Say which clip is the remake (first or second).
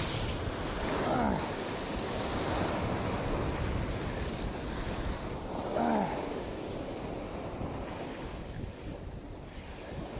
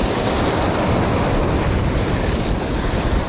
second